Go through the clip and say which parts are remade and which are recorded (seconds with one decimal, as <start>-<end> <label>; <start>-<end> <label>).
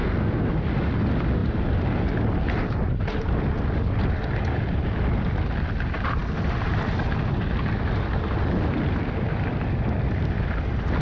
0.0-0.5 remade; 0.5-11.0 recorded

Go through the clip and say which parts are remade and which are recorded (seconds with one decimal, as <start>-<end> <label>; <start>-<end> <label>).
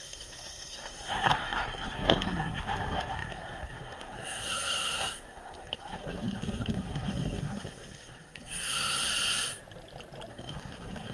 0.0-9.1 remade; 9.1-10.3 recorded; 10.3-11.1 remade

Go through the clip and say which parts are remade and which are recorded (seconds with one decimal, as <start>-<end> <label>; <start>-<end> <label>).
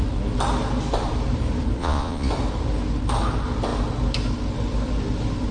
0.0-1.8 recorded; 1.8-2.3 remade; 2.3-5.5 recorded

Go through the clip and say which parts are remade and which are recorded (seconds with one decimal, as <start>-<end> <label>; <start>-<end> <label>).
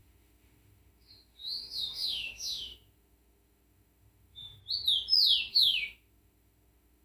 0.0-4.6 remade; 4.6-5.5 recorded; 5.5-7.0 remade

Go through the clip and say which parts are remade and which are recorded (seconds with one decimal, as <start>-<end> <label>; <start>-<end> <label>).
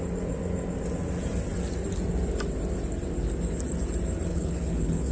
0.0-4.3 recorded; 4.3-5.1 remade